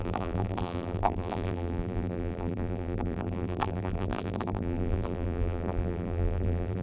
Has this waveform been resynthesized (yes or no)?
yes